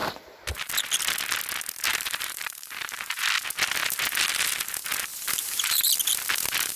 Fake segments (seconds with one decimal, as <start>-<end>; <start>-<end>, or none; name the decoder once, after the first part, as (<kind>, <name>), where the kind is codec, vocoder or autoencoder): 0.0-0.7 (vocoder, BigVGAN v2); 1.9-3.2; 5.1-6.1